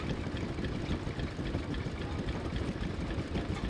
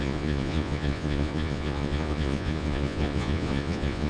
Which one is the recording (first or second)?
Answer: first